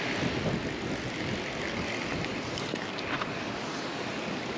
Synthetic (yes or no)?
no